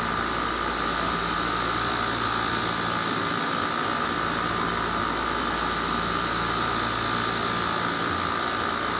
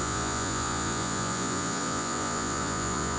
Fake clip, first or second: second